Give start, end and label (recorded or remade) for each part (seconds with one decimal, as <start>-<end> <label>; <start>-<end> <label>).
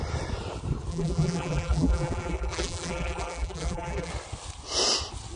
0.0-0.9 recorded; 0.9-4.1 remade; 4.1-5.4 recorded